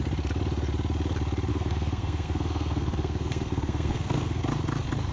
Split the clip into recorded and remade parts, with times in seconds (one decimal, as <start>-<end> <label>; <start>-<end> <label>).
0.0-1.5 recorded; 1.5-4.4 remade; 4.4-5.1 recorded